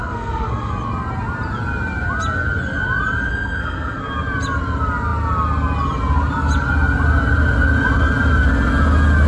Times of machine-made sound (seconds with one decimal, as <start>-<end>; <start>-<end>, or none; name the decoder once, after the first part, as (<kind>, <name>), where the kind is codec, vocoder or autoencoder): 0.0-0.7 (codec, SNAC); 3.3-4.0